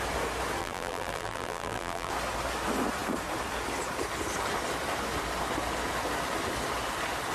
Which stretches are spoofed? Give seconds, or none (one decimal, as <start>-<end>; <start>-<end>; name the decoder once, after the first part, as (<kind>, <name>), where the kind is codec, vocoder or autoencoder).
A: 0.6-2.1 (vocoder, BigVGAN v2)